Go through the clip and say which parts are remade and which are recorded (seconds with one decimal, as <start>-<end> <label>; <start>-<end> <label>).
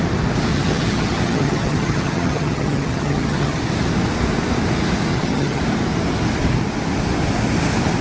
0.0-0.5 recorded; 0.5-3.6 remade; 3.6-5.1 recorded; 5.1-5.6 remade; 5.6-8.0 recorded